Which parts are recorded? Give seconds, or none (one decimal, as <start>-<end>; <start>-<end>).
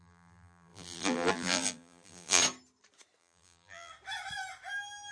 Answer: 2.4-3.2; 3.9-5.1